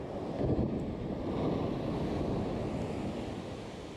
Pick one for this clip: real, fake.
real